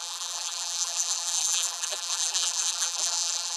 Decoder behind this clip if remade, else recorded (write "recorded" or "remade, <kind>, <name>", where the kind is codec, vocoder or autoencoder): remade, vocoder, BigVGAN v2